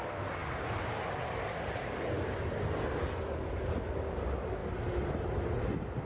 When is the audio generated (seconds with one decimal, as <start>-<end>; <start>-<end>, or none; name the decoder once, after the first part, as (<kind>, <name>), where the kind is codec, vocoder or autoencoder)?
none